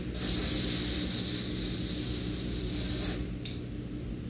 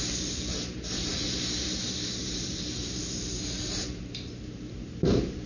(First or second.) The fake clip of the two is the second